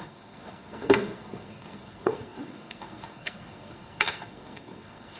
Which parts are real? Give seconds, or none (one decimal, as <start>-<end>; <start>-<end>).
none